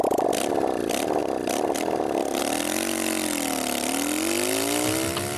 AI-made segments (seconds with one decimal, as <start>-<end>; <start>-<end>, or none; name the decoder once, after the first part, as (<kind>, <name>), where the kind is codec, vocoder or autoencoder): none

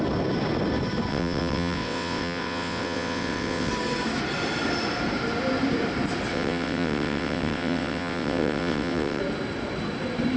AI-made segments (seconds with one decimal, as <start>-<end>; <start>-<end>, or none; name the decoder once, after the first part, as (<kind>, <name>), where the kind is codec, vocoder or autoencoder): 1.1-3.7 (vocoder, WaveNeXt); 6.3-9.2

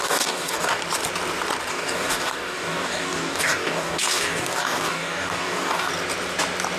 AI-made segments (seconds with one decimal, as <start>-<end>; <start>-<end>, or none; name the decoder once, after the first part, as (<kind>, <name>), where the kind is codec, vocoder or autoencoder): 0.0-0.8 (codec, DAC); 1.7-5.9

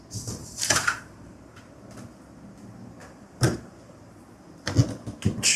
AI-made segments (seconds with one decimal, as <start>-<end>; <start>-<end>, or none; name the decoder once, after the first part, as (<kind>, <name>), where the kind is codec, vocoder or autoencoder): 0.4-1.6 (vocoder, BigVGAN v2); 3.0-4.0

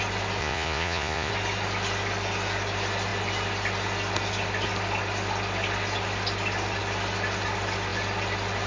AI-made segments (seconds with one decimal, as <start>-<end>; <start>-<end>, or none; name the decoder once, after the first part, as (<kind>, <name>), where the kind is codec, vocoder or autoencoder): 0.4-1.3 (vocoder, Vocos)

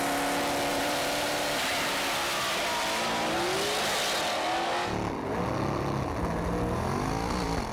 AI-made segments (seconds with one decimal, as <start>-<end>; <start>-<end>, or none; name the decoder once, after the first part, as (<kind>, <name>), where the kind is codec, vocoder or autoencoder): 0.7-1.6 (vocoder, BigVGAN v2)

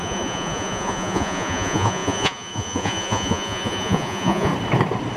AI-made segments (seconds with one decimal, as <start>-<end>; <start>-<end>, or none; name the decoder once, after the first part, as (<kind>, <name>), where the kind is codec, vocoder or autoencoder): 0.0-4.5 (vocoder, Vocos)

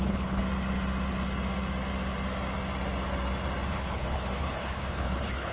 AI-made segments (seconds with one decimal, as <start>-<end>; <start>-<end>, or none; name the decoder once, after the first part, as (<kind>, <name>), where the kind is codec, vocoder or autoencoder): 0.0-0.4 (codec, HILCodec); 3.7-5.5